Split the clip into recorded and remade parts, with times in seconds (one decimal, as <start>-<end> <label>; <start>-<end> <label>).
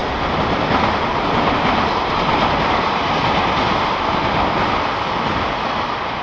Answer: 0.0-6.2 recorded